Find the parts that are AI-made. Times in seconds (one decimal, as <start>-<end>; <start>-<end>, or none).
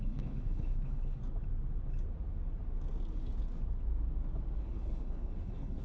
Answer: 0.0-1.2; 4.6-5.8